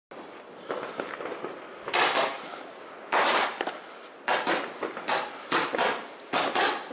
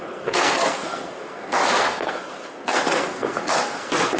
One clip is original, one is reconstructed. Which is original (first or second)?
first